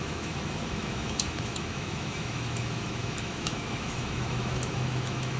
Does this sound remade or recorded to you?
remade